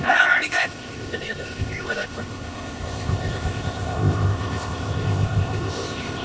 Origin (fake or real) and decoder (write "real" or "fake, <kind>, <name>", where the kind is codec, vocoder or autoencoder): fake, codec, ZipCodec